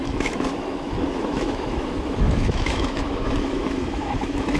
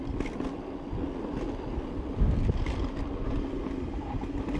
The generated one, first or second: first